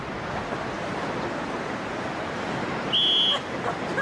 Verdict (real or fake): real